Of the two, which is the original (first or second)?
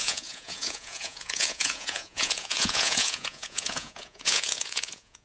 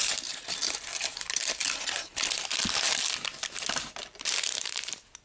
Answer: second